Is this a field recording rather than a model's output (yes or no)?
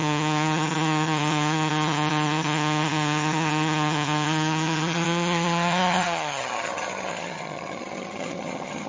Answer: no